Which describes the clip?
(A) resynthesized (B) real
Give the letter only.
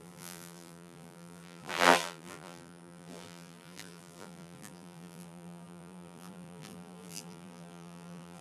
A